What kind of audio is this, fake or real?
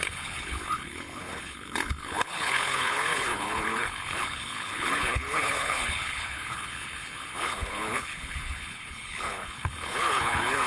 fake